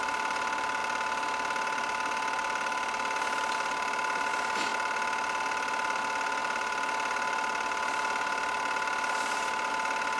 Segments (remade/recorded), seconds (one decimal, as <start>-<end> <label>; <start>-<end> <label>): 0.0-0.8 recorded; 0.8-4.3 remade; 4.3-6.4 recorded; 6.4-9.7 remade; 9.7-10.2 recorded